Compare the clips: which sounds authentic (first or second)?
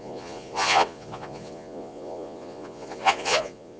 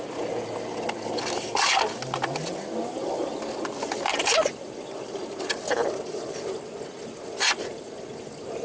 second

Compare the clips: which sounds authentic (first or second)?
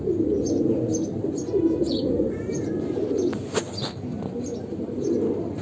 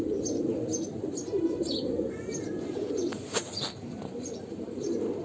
first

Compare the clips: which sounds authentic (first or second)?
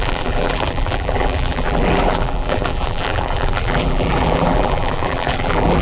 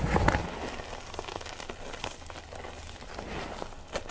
second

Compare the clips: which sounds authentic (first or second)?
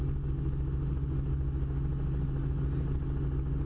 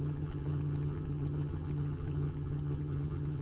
first